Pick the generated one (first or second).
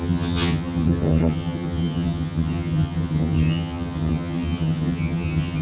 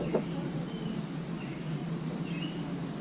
first